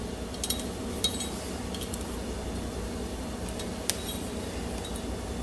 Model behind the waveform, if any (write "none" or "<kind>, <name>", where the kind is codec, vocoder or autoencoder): none